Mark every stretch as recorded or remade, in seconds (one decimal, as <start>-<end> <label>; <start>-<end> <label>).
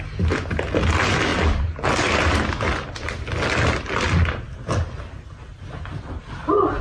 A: 0.0-6.8 recorded